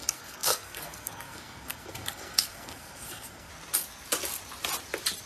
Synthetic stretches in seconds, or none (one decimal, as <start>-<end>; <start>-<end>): 0.0-3.5